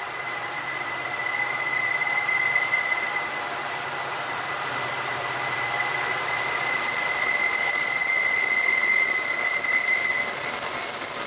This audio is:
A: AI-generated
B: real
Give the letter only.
A